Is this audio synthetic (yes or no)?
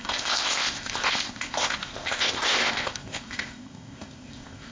yes